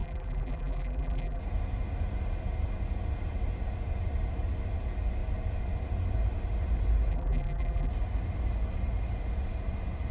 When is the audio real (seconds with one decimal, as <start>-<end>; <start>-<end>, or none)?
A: 1.4-7.1; 7.9-10.1